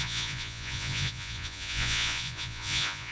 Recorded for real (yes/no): no